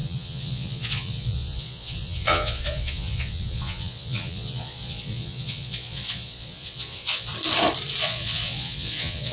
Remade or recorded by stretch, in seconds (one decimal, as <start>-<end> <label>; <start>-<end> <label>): 0.0-7.3 remade; 7.3-8.0 recorded; 8.0-9.3 remade